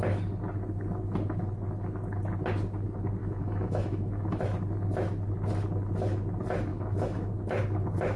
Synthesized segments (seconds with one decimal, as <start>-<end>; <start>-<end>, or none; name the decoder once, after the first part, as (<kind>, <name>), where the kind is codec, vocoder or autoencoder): 3.2-4.4 (autoencoder, DAC-VAE); 6.7-7.3

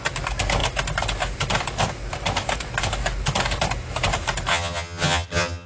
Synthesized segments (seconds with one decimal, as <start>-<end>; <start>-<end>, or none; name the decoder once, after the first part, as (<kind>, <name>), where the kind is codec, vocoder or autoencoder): 4.5-5.7 (vocoder, HiFi-GAN)

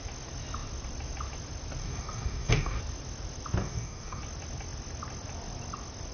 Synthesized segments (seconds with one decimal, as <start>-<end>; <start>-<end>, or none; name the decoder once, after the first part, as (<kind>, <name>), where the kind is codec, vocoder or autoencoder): 1.8-2.8 (codec, DAC); 3.6-4.2